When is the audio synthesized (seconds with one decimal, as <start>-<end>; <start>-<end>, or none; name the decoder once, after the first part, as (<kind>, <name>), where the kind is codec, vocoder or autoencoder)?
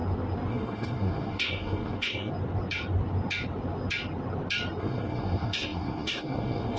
0.5-2.3 (codec, SNAC); 4.8-6.8